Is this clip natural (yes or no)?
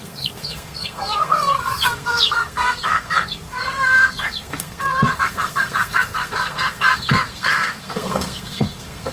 no